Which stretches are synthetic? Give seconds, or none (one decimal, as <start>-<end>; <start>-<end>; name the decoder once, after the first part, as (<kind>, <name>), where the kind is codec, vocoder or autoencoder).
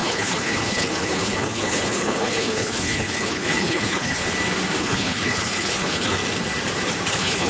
0.0-4.2 (codec, HILCodec); 4.8-6.2; 7.1-7.5